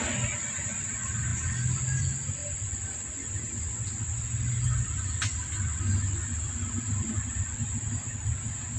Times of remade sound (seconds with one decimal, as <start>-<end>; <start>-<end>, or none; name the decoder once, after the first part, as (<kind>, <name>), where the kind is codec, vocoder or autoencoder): none